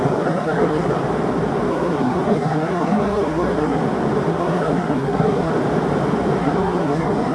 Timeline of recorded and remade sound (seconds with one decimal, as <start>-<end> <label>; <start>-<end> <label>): 0.0-1.0 remade; 1.0-1.7 recorded; 1.7-3.8 remade; 3.8-4.3 recorded; 4.3-5.5 remade; 5.5-6.4 recorded; 6.4-7.3 remade